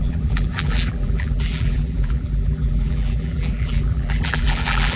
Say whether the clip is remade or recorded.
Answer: remade